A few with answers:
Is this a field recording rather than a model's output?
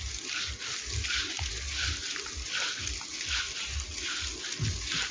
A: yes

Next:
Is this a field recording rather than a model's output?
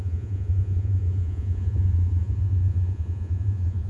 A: no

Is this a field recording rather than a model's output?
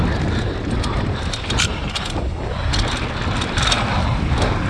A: yes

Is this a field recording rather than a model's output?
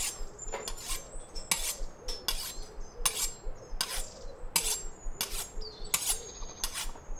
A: yes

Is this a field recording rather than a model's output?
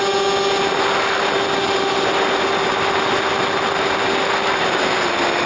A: yes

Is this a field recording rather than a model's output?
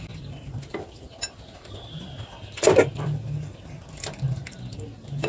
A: yes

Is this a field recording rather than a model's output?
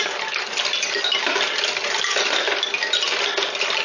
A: yes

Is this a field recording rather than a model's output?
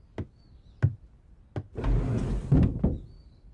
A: yes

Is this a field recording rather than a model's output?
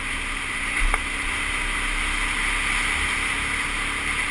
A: yes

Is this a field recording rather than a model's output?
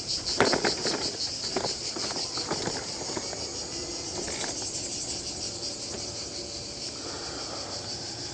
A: yes